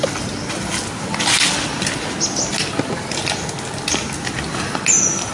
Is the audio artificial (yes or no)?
no